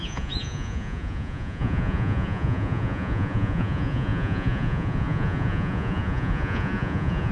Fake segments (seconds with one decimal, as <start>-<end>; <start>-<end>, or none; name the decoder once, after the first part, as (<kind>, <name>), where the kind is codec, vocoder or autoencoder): 0.0-7.3 (vocoder, Vocos)